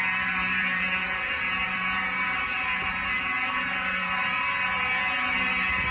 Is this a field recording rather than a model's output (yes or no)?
no